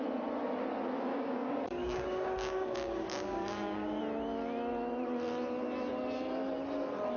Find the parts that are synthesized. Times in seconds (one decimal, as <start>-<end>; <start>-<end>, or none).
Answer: 1.1-4.0